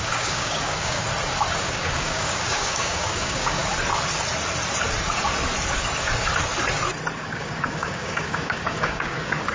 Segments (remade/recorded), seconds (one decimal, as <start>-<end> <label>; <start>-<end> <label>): 0.0-1.0 remade; 1.0-1.6 recorded; 1.6-3.6 remade; 3.6-7.2 recorded; 7.2-9.5 remade

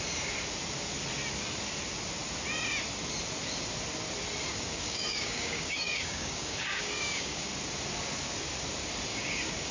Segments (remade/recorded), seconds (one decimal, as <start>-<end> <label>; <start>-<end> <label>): 0.0-4.5 recorded; 4.5-7.5 remade; 7.5-9.1 recorded; 9.1-9.7 remade

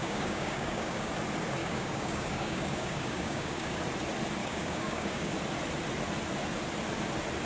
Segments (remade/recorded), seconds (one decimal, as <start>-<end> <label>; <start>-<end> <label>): 0.0-1.1 remade; 1.1-1.6 recorded; 1.6-3.8 remade; 3.8-4.4 recorded; 4.4-5.3 remade; 5.3-7.5 recorded

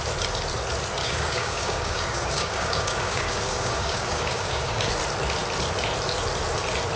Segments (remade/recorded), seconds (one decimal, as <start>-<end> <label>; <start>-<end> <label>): 0.0-1.0 recorded; 1.0-4.9 remade; 4.9-7.0 recorded